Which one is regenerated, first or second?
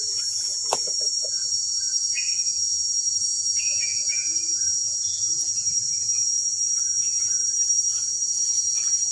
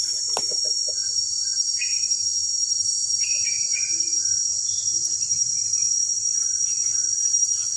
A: first